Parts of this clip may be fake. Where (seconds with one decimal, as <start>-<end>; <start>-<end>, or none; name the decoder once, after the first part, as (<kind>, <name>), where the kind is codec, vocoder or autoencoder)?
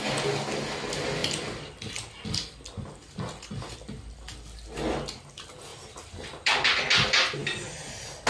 none